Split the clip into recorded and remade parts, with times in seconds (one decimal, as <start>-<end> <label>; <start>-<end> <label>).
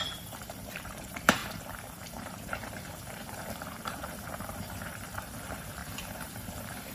0.0-6.9 remade